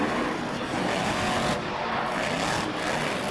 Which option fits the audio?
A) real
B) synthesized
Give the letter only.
A